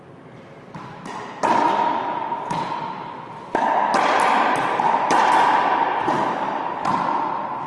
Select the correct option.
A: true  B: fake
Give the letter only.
A